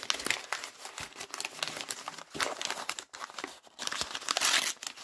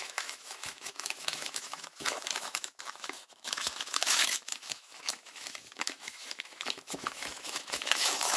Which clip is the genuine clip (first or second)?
first